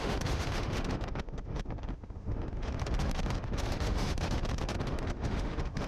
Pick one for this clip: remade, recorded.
remade